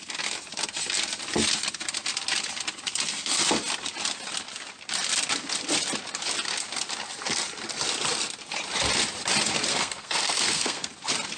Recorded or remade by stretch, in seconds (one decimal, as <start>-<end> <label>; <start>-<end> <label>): 0.0-9.7 recorded; 9.7-10.9 remade; 10.9-11.4 recorded